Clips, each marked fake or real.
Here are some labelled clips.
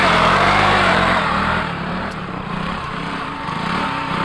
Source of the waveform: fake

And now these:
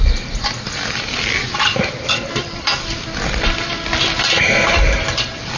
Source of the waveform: real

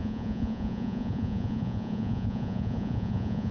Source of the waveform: fake